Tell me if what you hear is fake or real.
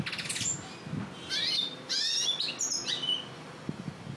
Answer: real